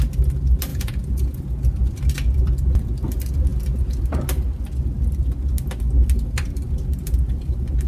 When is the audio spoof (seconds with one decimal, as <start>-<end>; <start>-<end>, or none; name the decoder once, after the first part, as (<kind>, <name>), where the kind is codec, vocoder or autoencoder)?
0.7-2.0 (vocoder, Vocos)